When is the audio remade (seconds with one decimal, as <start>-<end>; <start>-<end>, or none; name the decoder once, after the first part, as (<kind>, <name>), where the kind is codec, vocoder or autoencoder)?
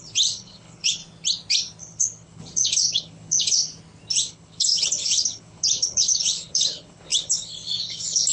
0.0-1.0 (codec, HILCodec); 1.8-3.7; 4.2-8.3